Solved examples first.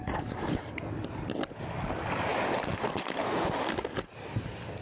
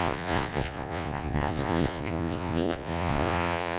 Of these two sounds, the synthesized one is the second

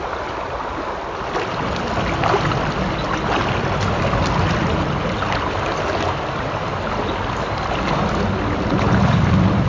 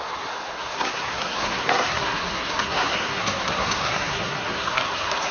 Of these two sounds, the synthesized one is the second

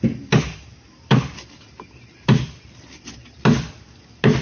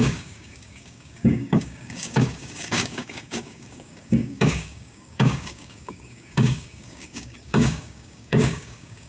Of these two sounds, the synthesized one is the second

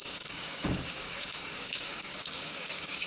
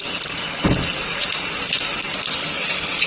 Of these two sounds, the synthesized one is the first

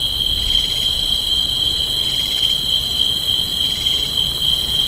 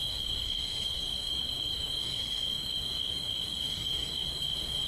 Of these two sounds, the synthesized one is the second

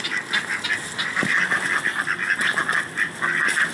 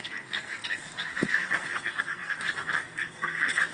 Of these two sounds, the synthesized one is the second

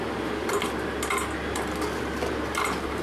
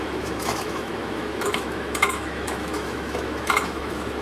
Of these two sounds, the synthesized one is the second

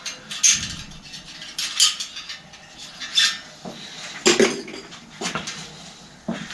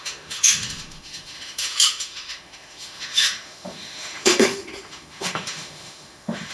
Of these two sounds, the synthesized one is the second